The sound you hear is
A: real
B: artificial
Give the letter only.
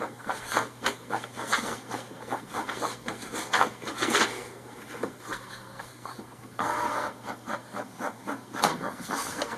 B